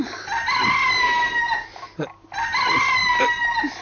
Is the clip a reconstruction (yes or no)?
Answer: no